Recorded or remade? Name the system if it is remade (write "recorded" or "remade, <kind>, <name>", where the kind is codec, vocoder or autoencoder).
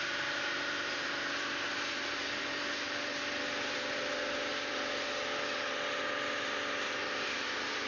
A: recorded